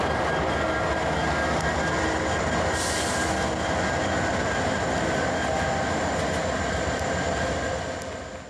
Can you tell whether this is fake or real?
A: real